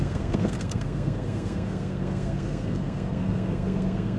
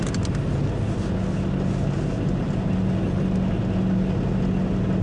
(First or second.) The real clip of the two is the second